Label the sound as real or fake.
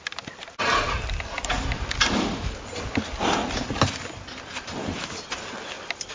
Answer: real